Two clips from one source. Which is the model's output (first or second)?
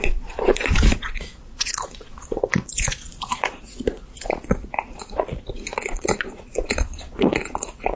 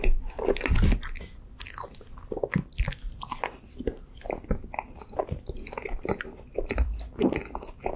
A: first